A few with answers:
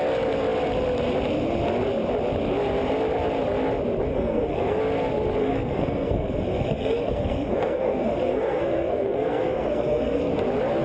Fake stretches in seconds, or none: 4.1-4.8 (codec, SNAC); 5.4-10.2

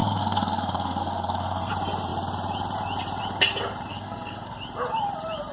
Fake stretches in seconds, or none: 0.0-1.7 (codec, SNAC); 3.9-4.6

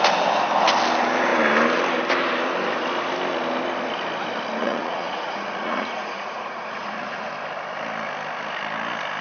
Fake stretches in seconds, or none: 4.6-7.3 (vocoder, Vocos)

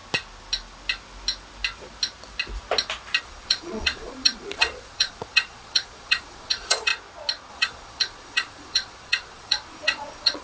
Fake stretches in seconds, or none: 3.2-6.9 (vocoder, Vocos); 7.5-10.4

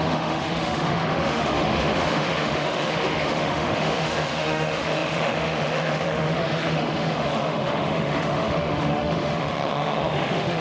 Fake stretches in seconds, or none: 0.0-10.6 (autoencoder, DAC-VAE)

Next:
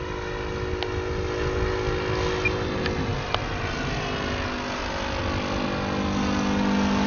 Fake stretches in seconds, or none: none

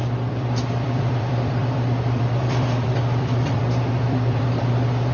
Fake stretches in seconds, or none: 0.0-5.1 (vocoder, BigVGAN v2)